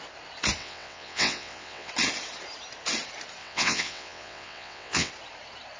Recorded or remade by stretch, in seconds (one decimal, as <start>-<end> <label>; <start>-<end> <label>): 0.0-0.6 recorded; 0.6-1.9 remade; 1.9-3.4 recorded; 3.4-5.1 remade; 5.1-5.8 recorded